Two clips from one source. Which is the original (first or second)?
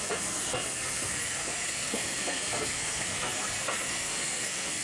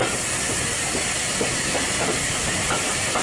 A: second